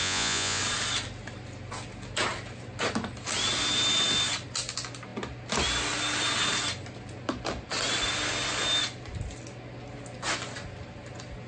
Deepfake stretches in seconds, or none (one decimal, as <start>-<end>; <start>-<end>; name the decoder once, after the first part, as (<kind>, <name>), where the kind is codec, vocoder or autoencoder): 0.0-0.6 (vocoder, Vocos)